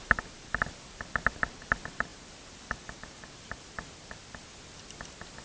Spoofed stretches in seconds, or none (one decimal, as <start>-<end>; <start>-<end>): 0.0-2.1; 3.3-5.4

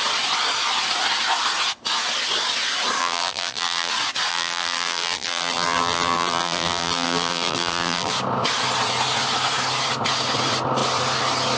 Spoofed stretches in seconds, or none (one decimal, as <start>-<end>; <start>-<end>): 3.0-3.9; 4.3-8.1

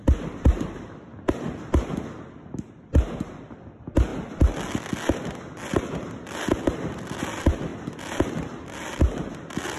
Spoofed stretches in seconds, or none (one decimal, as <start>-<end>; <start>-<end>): none

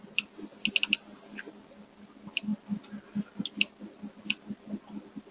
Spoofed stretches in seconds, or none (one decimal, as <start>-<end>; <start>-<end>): none

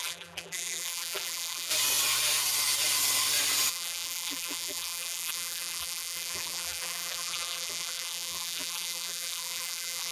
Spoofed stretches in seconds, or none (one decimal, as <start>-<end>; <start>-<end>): 0.0-1.7; 3.7-10.1